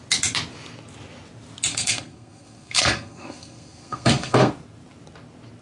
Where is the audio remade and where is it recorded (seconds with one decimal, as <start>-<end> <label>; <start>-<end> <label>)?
0.0-1.7 recorded; 1.7-4.5 remade; 4.5-5.6 recorded